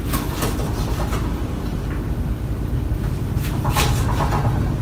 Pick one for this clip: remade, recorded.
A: recorded